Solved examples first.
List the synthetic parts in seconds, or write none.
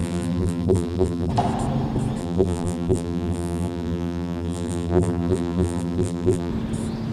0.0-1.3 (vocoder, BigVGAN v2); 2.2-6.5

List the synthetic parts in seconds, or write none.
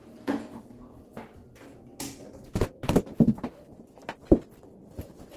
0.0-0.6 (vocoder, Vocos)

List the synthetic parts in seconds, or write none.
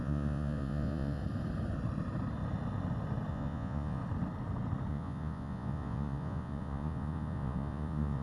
0.0-1.2 (vocoder, Vocos); 3.3-4.0; 4.9-8.2